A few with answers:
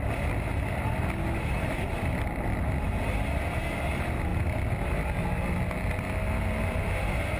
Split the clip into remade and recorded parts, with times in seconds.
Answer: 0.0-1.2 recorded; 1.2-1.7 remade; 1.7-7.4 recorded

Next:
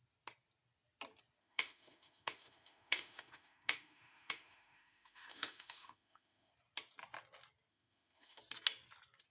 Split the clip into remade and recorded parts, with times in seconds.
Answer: 0.0-1.4 recorded; 1.4-6.5 remade; 6.5-7.7 recorded; 7.7-8.4 remade; 8.4-9.3 recorded

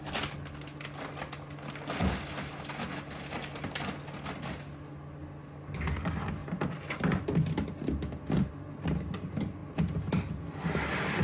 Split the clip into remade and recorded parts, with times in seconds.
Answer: 0.0-11.2 recorded

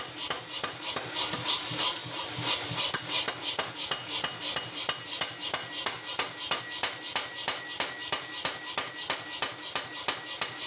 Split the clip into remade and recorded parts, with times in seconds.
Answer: 0.0-10.7 recorded

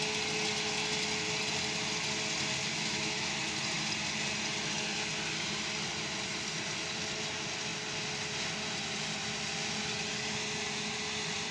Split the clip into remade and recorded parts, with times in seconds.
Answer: 0.0-2.7 recorded; 2.7-3.3 remade; 3.3-11.5 recorded

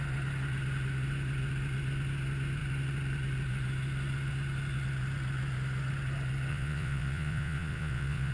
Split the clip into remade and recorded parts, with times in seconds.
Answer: 0.0-6.5 recorded; 6.5-8.3 remade

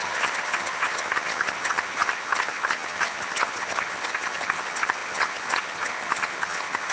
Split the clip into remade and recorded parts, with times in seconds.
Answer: 0.0-6.9 remade

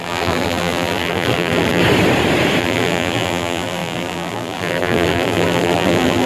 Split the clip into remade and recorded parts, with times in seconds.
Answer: 0.0-1.8 remade; 1.8-2.6 recorded; 2.6-6.3 remade